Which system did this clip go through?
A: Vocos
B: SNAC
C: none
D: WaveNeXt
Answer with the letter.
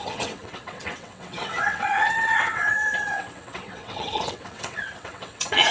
D